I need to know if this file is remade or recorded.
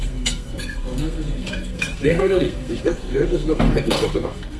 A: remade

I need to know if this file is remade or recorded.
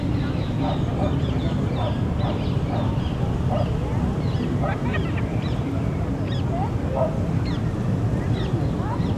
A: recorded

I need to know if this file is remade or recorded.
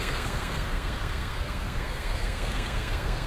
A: remade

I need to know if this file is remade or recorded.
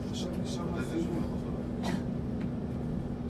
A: recorded